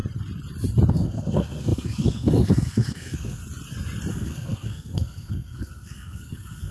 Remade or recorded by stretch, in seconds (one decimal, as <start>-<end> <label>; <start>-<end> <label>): 0.0-0.9 recorded; 0.9-3.4 remade; 3.4-4.1 recorded; 4.1-6.7 remade